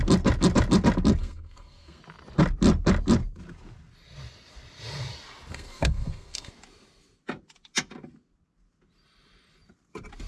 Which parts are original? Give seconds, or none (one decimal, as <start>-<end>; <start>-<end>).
0.0-1.2; 2.0-5.5; 6.5-10.3